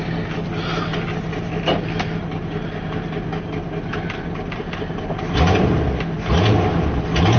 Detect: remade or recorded recorded